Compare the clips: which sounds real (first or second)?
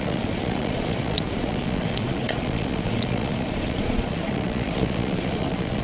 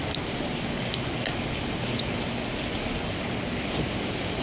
second